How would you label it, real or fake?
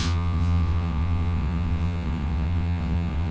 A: fake